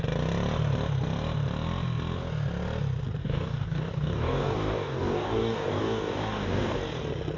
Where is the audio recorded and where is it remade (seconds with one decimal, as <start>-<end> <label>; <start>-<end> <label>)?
0.0-3.2 recorded; 3.2-6.8 remade; 6.8-7.4 recorded